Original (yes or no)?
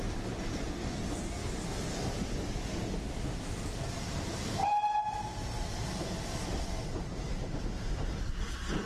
yes